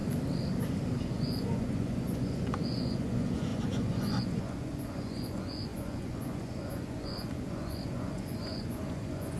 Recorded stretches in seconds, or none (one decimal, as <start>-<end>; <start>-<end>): 0.0-1.0